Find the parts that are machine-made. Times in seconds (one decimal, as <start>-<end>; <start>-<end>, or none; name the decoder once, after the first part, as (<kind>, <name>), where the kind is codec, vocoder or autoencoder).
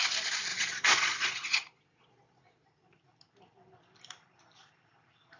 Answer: 0.5-2.9 (vocoder, Vocos)